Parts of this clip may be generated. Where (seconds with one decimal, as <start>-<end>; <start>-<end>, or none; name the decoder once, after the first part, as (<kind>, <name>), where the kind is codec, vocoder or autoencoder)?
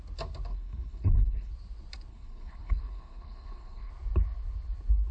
0.5-1.5 (codec, HILCodec); 2.1-3.9